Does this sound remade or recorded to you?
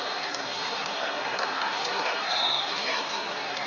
remade